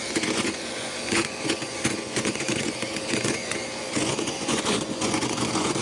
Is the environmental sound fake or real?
fake